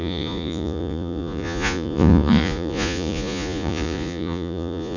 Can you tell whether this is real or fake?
fake